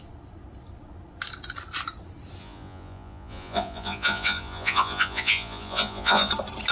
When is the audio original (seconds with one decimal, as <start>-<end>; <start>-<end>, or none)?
0.0-2.4; 6.3-6.7